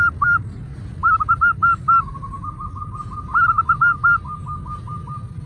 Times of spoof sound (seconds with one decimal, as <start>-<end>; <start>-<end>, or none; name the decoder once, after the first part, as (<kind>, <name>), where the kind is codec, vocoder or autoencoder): none